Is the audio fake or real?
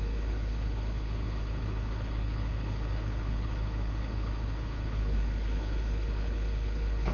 fake